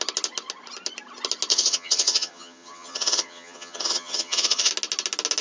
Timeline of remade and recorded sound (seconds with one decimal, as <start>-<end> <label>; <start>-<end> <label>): 0.0-1.5 recorded; 1.5-4.7 remade; 4.7-5.4 recorded